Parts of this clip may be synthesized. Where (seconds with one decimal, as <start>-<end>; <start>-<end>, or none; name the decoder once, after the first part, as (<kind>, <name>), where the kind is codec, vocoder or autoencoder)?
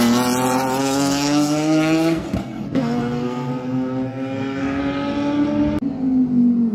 0.8-4.8 (codec, SNAC)